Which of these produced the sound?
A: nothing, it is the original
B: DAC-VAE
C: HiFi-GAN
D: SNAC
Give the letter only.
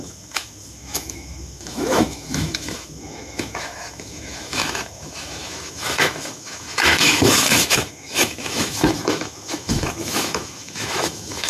B